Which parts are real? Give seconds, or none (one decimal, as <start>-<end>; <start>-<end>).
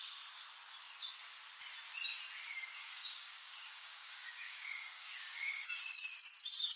0.0-2.8; 5.8-6.8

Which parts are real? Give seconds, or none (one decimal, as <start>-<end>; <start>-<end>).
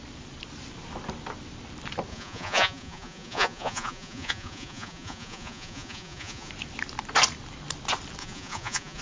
0.0-2.1; 6.5-8.2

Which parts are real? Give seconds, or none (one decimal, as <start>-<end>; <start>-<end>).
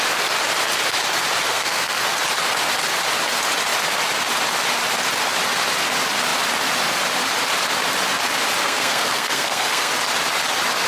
0.0-1.5; 2.0-8.6; 9.9-10.9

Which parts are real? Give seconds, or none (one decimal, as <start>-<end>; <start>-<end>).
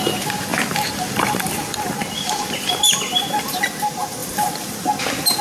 0.0-0.5; 3.5-4.2; 4.9-5.4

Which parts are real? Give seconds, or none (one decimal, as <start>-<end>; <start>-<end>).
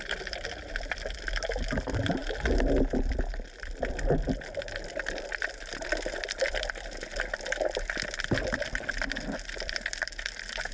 0.0-10.7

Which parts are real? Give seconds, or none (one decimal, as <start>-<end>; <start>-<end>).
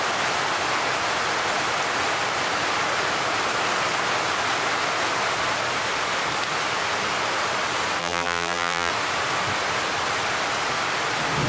0.0-8.0; 8.9-11.5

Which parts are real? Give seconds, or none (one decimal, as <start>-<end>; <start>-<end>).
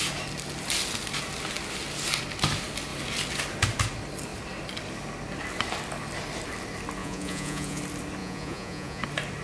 0.0-7.0; 7.8-8.2; 9.0-9.4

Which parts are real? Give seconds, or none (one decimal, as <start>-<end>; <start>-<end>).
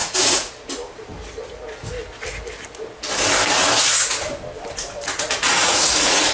0.5-5.6